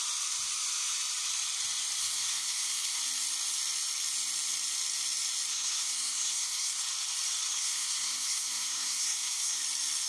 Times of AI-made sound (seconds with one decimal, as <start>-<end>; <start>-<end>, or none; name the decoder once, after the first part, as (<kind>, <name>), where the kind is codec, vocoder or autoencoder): 2.0-3.0 (codec, SNAC); 5.5-6.8; 7.5-9.6